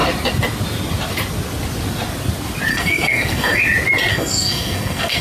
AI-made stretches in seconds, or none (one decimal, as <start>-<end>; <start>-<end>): 2.7-3.6; 4.1-5.2